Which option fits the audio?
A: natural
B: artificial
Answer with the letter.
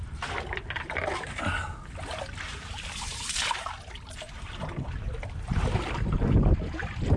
A